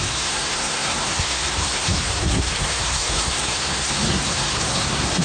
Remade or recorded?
remade